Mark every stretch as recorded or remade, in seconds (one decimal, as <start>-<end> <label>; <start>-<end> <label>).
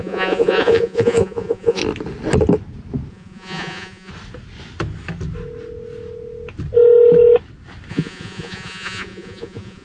0.0-1.8 remade; 1.8-3.1 recorded; 3.1-4.1 remade; 4.1-7.9 recorded; 7.9-9.8 remade